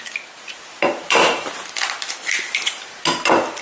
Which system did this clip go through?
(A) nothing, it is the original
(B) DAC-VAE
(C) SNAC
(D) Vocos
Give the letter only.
A